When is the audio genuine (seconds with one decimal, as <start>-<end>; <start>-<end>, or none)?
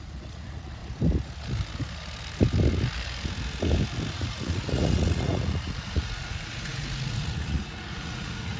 0.8-4.1